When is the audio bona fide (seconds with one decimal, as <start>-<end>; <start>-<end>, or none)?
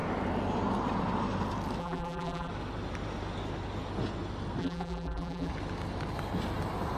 0.0-1.8; 2.5-4.6; 5.5-7.0